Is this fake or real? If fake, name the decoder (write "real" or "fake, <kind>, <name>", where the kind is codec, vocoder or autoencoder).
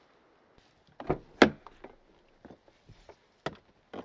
real